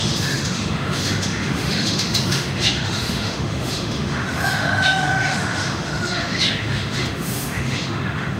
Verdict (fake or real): fake